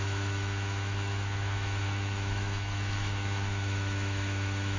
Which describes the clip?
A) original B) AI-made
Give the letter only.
B